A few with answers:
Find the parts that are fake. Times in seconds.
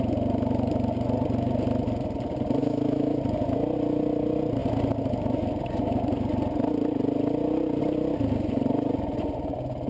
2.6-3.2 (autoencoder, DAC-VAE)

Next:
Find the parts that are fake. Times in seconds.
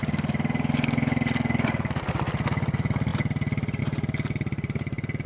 none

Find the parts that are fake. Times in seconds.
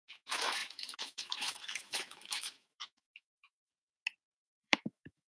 0.0-3.7 (autoencoder, DAC-VAE); 4.4-5.3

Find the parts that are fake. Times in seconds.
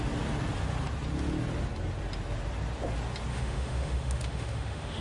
3.3-5.0 (autoencoder, DAC-VAE)